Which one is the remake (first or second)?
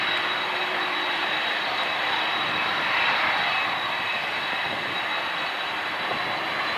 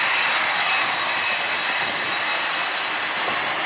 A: first